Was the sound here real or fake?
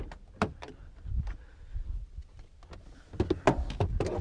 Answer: real